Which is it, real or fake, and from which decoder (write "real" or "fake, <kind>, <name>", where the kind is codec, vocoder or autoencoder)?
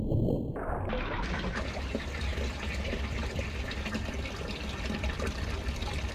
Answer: real